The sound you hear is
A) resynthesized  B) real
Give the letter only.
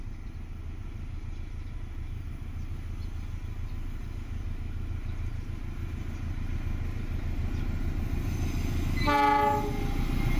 B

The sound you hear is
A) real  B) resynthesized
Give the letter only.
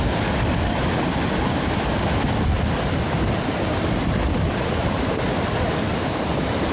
A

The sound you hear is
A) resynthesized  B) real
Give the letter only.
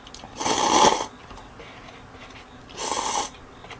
B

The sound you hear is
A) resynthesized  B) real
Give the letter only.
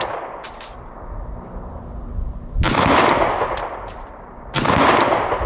B